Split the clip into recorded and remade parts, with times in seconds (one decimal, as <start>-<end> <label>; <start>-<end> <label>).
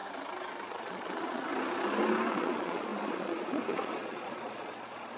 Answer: 0.0-0.7 recorded; 0.7-1.5 remade; 1.5-2.3 recorded; 2.3-5.2 remade